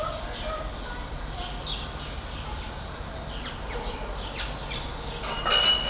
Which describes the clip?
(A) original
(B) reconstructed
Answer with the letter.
A